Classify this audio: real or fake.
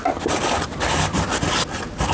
real